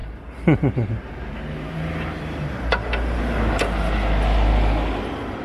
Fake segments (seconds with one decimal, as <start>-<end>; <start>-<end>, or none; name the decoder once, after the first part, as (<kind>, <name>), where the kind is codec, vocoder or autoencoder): 0.0-3.2 (vocoder, BigVGAN v2)